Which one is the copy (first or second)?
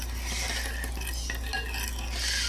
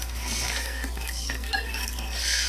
second